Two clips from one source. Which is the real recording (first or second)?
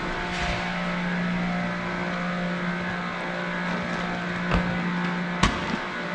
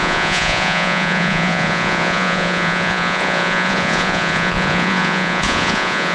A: first